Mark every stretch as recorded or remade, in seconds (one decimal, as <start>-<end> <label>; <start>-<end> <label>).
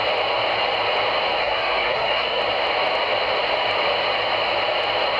0.0-1.4 recorded; 1.4-2.4 remade; 2.4-5.2 recorded